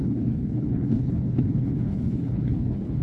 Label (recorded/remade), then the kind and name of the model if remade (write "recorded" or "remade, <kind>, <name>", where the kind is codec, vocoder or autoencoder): remade, codec, HILCodec